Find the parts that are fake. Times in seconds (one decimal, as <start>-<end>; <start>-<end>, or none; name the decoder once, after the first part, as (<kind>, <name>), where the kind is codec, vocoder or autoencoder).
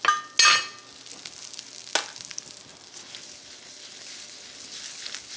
none